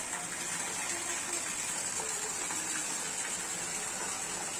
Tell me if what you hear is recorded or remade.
recorded